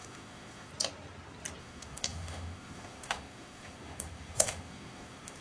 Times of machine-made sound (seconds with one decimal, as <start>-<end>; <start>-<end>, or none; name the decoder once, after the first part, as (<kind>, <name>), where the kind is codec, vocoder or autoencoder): 0.0-0.7 (autoencoder, DAC-VAE); 1.6-5.4